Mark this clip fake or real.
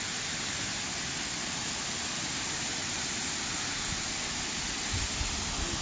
real